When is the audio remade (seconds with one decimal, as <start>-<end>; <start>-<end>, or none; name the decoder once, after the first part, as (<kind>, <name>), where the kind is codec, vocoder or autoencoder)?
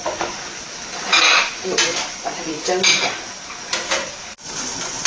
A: 0.0-0.6 (vocoder, Vocos); 1.4-2.5; 4.2-5.1